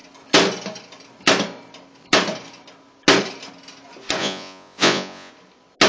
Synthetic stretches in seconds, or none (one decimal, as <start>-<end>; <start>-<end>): 4.2-5.3